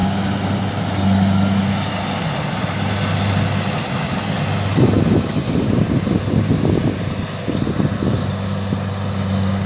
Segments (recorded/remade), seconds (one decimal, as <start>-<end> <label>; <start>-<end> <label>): 0.0-9.7 recorded